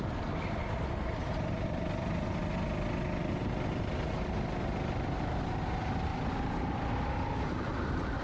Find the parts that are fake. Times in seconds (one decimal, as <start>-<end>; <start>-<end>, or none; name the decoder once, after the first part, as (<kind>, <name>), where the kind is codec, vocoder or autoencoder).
none